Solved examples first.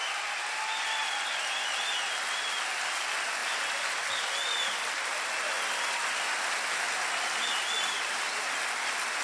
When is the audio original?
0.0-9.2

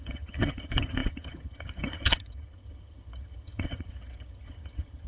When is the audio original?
none